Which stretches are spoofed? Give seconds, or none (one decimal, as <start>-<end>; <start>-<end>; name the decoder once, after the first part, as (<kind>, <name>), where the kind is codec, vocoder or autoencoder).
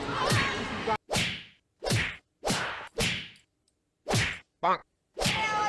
4.8-5.3 (vocoder, BigVGAN v2)